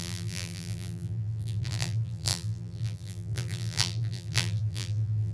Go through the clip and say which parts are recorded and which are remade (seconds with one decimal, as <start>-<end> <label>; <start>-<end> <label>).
0.0-5.3 remade